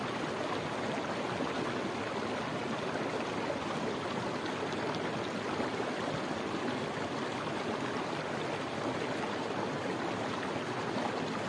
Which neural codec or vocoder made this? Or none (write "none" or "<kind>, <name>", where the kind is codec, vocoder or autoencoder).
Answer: none